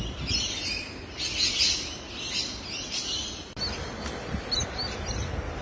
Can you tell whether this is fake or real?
real